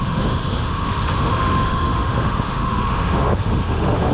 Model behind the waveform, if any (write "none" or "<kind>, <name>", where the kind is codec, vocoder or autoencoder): autoencoder, DAC-VAE